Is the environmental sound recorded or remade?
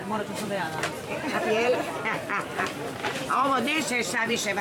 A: remade